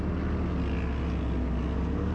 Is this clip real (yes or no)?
yes